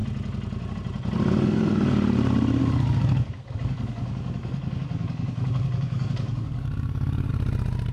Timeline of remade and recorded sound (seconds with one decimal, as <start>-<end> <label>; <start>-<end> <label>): 0.0-2.6 recorded; 2.6-7.3 remade; 7.3-7.9 recorded